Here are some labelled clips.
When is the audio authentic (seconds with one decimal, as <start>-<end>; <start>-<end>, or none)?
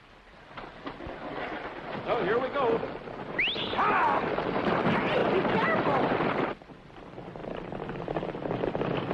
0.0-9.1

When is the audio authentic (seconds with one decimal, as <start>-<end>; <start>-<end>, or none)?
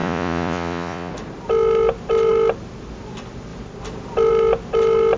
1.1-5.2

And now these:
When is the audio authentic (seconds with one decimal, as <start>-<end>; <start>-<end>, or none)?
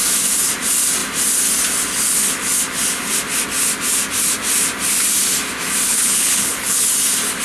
0.0-5.9; 6.9-7.4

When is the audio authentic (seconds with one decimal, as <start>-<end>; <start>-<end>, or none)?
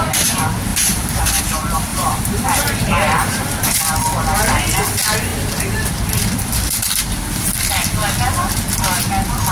0.0-0.7; 1.4-1.9; 3.8-9.5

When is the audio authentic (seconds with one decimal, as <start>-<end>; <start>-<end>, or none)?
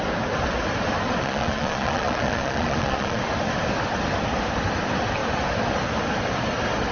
0.0-1.2; 3.2-6.9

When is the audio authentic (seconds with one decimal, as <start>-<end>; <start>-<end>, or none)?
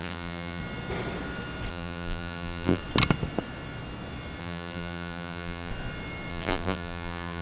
0.6-1.7; 2.8-4.4; 5.7-6.3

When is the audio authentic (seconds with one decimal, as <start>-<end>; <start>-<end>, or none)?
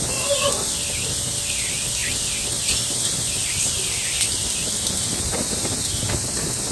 0.0-6.7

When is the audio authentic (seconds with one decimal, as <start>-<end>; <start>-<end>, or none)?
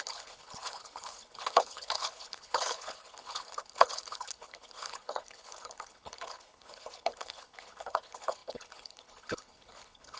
none